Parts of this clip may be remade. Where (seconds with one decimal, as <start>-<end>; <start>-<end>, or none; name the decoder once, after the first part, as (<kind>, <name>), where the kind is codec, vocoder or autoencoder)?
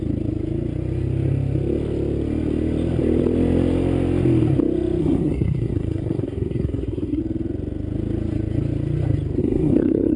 5.0-7.2 (codec, SNAC); 9.4-10.2